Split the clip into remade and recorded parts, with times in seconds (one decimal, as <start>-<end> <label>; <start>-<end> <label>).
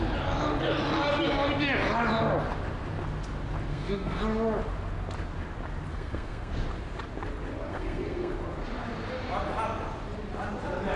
0.0-3.7 recorded; 3.7-4.2 remade; 4.2-5.9 recorded; 5.9-6.5 remade; 6.5-7.7 recorded; 7.7-8.3 remade; 8.3-11.0 recorded